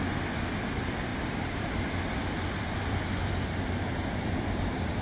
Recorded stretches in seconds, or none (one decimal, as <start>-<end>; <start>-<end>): 0.0-1.1; 3.4-5.0